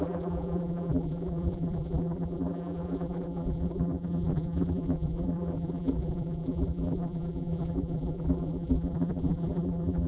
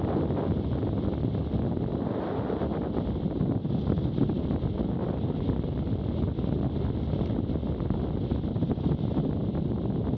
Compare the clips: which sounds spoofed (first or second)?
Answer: first